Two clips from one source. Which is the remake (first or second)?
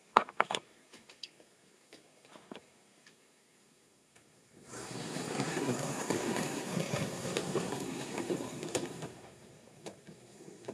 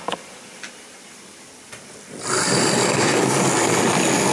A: first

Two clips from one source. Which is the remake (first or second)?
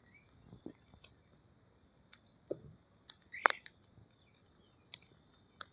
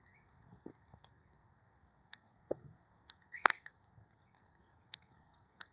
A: second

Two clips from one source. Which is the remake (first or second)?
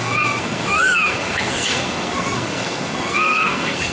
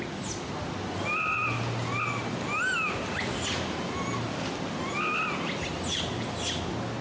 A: first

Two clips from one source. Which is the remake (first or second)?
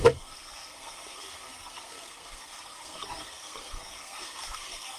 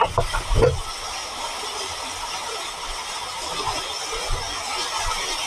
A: first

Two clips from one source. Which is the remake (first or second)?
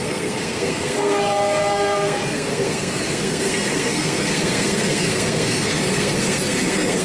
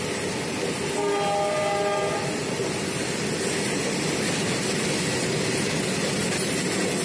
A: first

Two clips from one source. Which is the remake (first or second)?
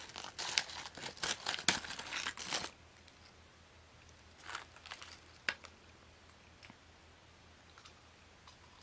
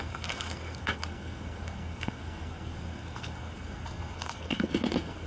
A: second